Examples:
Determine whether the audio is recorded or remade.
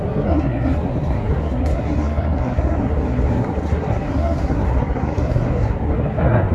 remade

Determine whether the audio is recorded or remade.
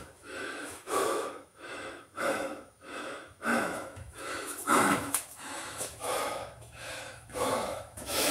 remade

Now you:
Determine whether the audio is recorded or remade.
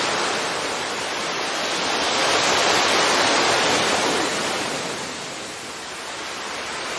recorded